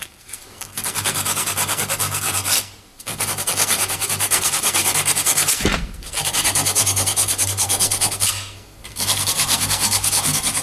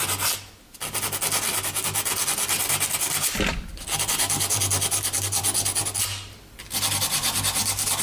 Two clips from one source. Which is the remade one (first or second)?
first